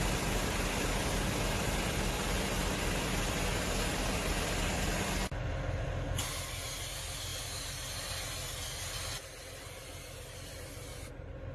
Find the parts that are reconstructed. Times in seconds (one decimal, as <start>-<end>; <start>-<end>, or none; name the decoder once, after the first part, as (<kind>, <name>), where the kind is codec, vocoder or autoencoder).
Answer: none